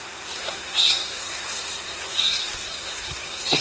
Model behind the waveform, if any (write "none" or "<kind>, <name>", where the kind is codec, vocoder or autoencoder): codec, SNAC